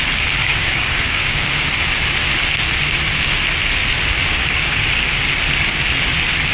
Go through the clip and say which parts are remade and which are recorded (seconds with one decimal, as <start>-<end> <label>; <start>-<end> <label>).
0.0-0.4 recorded; 0.4-1.7 remade; 1.7-4.3 recorded; 4.3-4.8 remade; 4.8-6.5 recorded